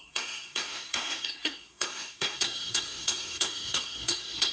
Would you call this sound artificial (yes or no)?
yes